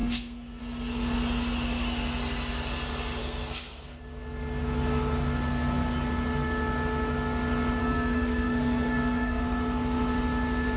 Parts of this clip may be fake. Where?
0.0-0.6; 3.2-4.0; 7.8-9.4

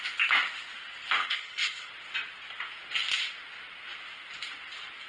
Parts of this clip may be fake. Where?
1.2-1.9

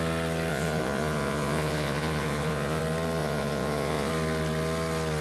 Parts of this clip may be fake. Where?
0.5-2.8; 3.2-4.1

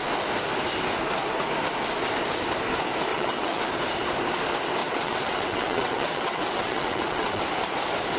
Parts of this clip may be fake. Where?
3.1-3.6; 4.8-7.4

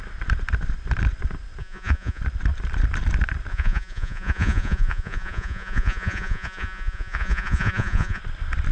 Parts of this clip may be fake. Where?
1.6-2.2; 3.5-8.2

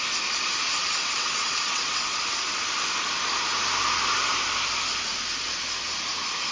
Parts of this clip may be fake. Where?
0.8-2.2

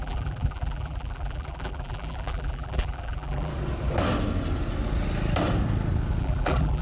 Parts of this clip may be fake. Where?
0.0-3.5; 6.2-6.8

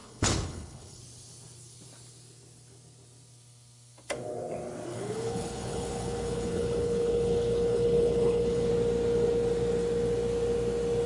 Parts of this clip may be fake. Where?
0.0-1.0; 4.9-8.7